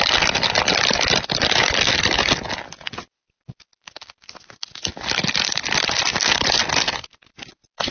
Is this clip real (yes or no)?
yes